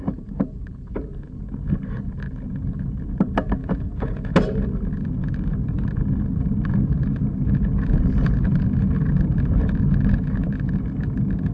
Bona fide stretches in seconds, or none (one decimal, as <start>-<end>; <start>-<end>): 0.0-3.6; 4.3-11.5